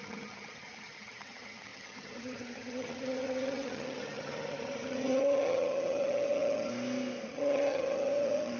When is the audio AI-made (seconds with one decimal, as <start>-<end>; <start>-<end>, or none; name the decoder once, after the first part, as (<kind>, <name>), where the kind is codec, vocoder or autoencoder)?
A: 0.0-6.7 (vocoder, HiFi-GAN); 7.3-8.6